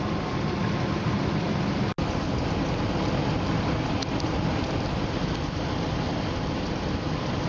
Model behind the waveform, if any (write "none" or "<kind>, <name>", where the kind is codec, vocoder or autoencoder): none